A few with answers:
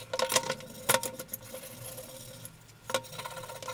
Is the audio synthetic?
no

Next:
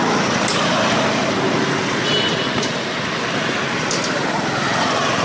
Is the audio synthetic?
no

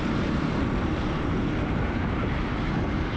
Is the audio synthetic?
yes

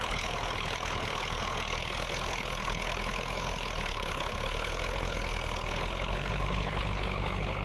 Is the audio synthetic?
yes